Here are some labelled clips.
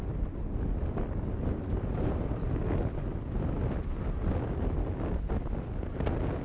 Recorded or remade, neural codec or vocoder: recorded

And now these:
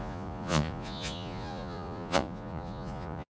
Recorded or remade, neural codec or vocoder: remade, vocoder, Vocos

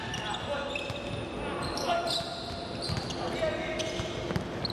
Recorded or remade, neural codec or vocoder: recorded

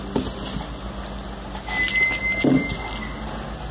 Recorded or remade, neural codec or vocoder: recorded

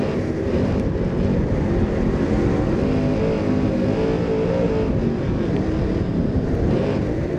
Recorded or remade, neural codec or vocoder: recorded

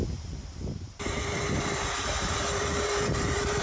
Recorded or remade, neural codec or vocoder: remade, vocoder, BigVGAN v2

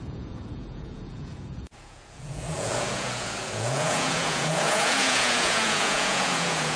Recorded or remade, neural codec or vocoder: remade, vocoder, Vocos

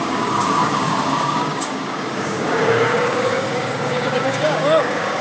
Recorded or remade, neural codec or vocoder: remade, codec, DAC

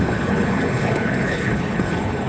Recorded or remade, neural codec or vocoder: remade, codec, HILCodec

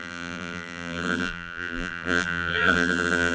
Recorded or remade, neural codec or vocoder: remade, vocoder, BigVGAN v2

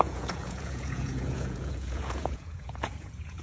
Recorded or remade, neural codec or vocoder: remade, vocoder, Vocos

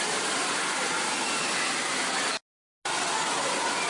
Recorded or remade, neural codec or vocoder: recorded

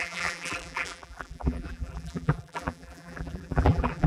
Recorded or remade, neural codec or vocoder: remade, vocoder, BigVGAN v2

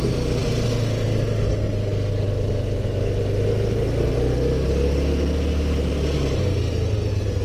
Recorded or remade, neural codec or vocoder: recorded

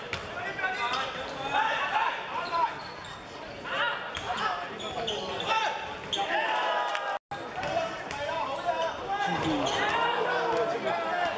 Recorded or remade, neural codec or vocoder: recorded